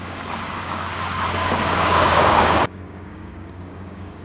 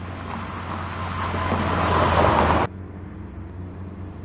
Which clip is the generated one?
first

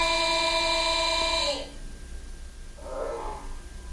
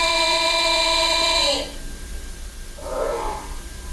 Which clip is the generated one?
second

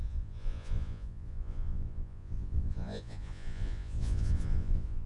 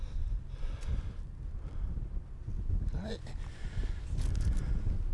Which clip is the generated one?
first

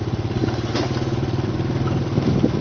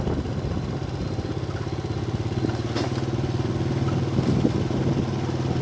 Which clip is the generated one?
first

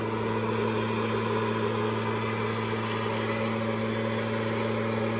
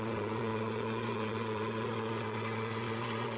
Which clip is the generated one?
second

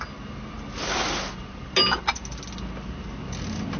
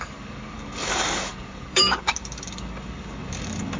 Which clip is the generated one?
second